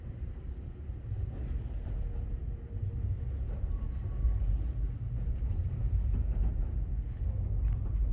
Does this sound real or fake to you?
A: real